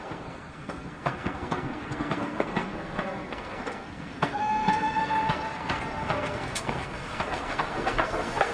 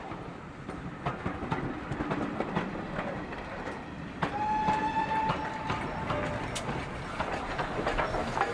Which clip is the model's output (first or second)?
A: first